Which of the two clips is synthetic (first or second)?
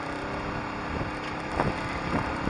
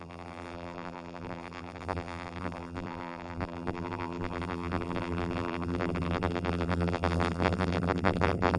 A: second